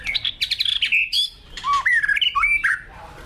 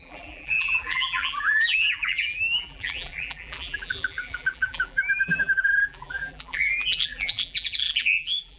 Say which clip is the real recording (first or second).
first